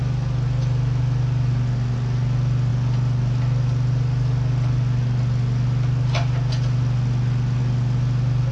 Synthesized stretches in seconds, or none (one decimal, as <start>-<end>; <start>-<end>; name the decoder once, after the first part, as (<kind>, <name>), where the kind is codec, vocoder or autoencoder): none